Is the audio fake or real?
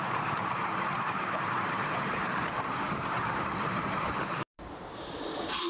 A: fake